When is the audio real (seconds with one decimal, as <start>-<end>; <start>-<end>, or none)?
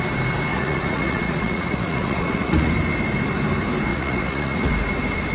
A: 0.0-0.5; 2.7-3.9; 4.7-5.3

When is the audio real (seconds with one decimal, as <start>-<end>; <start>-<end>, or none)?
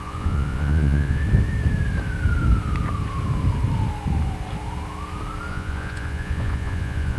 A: 1.2-5.5